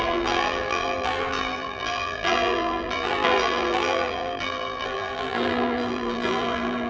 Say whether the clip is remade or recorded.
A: remade